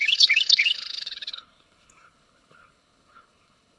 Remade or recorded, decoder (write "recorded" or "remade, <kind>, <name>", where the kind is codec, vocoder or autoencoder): remade, codec, HILCodec